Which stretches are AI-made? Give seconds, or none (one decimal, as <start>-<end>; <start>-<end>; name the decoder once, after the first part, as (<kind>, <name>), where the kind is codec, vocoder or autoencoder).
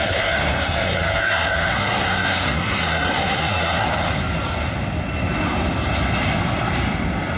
0.0-3.9 (codec, SNAC)